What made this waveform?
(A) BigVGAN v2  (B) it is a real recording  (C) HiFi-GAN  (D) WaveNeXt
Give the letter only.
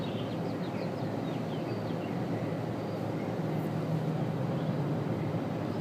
B